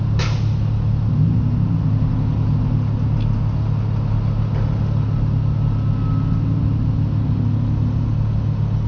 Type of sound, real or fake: real